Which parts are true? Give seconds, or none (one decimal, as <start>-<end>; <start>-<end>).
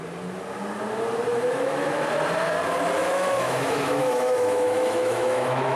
0.0-1.3; 2.0-3.0